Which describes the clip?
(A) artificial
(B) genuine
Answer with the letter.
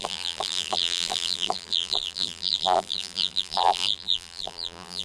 A